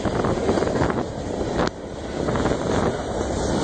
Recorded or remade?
recorded